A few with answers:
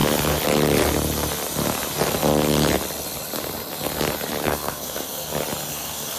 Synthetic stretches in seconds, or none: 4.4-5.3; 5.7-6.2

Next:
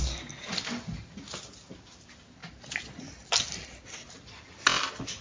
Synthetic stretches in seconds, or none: none

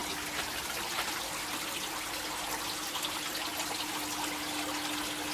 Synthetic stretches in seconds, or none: none

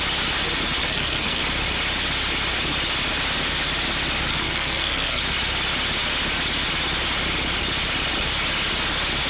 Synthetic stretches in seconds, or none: 0.8-1.4; 4.3-5.2